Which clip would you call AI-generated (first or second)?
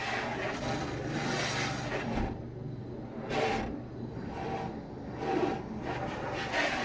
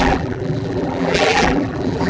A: second